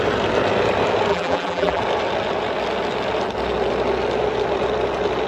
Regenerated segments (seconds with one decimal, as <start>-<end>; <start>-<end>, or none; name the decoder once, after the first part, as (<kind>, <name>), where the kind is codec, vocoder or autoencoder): 1.1-1.8 (vocoder, BigVGAN v2)